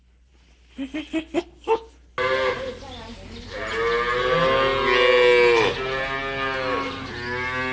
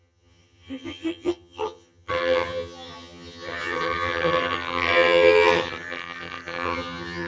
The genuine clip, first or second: first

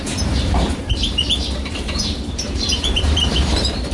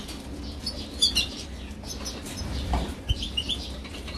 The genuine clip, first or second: second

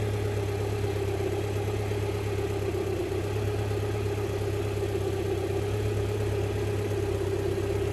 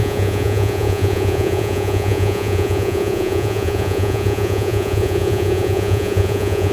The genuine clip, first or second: first